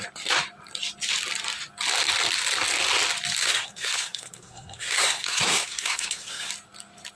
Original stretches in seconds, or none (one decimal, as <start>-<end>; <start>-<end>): 0.0-3.4; 6.5-7.2

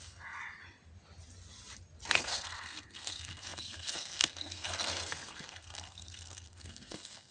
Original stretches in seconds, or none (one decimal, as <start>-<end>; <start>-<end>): 0.4-2.2